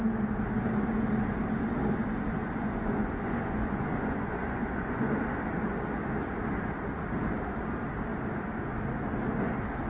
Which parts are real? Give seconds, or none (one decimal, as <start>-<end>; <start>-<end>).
0.0-2.4; 5.2-9.9